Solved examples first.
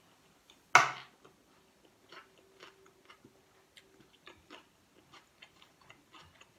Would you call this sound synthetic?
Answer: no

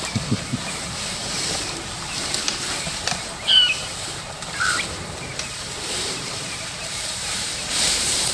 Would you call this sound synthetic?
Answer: yes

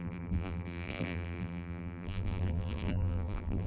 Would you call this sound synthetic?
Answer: yes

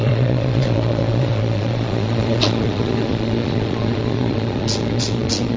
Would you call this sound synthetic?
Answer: yes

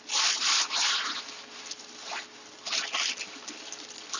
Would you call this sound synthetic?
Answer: no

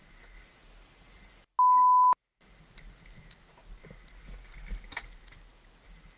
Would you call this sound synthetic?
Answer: no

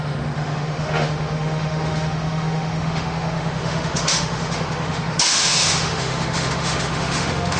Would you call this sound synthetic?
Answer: yes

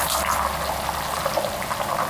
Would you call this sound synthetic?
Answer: no